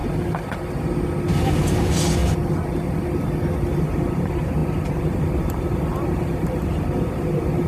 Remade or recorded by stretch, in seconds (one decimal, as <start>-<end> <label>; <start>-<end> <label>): 0.0-1.6 recorded; 1.6-2.2 remade; 2.2-3.7 recorded; 3.7-7.7 remade